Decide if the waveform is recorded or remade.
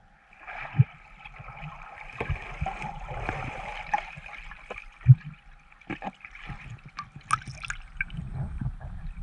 recorded